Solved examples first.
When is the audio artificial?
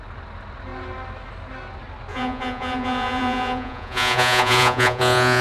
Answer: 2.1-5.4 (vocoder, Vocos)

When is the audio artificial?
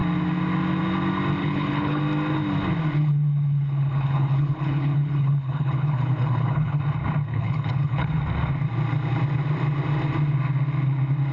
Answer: 1.4-2.0 (codec, HILCodec); 3.0-6.8; 7.3-8.2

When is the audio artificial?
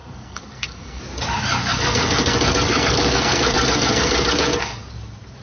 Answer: 0.0-1.0 (codec, SNAC); 1.6-4.8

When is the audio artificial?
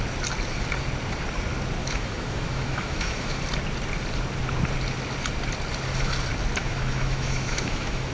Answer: 1.8-3.4 (autoencoder, DAC-VAE); 6.6-8.1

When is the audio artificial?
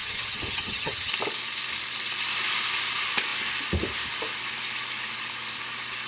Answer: 0.0-1.1 (vocoder, HiFi-GAN)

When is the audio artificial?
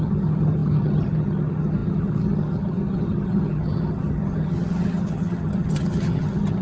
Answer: 0.0-6.6 (vocoder, HiFi-GAN)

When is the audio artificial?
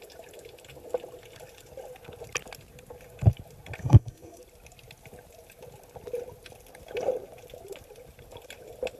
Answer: 3.8-4.4 (codec, SNAC)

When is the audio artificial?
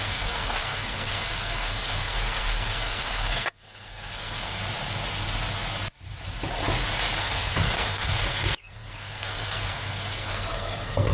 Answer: 0.0-4.6 (codec, SNAC); 7.2-11.1